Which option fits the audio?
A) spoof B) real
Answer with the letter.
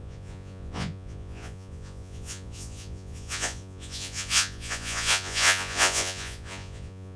A